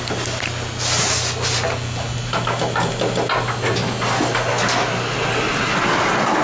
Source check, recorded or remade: recorded